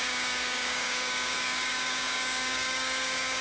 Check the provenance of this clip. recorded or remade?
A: remade